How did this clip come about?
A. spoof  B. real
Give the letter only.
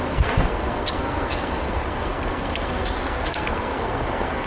A